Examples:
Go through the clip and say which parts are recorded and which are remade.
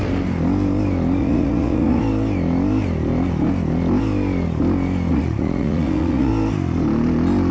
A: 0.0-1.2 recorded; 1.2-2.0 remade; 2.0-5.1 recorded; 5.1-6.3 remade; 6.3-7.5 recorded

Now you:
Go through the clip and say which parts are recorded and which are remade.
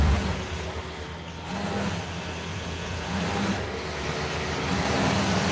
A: 0.0-0.8 remade; 0.8-2.5 recorded; 2.5-3.2 remade; 3.2-5.5 recorded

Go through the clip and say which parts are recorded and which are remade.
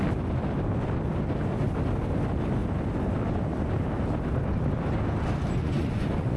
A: 0.0-5.6 recorded; 5.6-6.4 remade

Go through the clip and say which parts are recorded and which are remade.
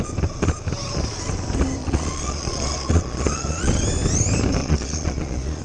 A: 0.0-1.8 recorded; 1.8-3.7 remade; 3.7-4.6 recorded; 4.6-5.6 remade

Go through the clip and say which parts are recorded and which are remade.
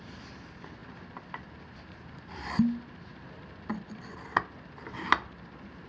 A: 0.0-5.9 recorded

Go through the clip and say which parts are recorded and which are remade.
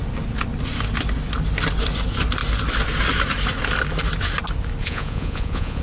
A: 0.0-4.8 recorded; 4.8-5.8 remade